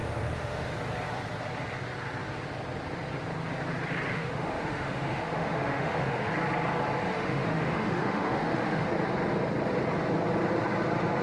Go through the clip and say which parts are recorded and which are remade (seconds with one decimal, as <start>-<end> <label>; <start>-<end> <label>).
0.0-0.7 remade; 0.7-4.1 recorded; 4.1-6.3 remade; 6.3-7.1 recorded; 7.1-8.9 remade; 8.9-11.2 recorded